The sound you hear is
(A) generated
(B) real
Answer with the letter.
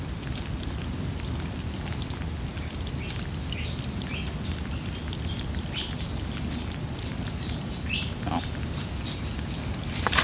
B